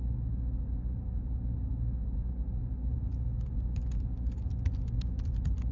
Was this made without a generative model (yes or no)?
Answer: yes